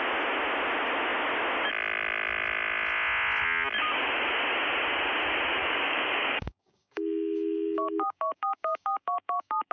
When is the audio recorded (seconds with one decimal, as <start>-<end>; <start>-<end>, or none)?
0.0-5.6